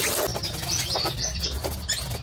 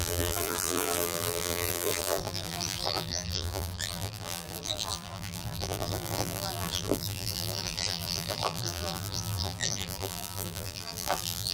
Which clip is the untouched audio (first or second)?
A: first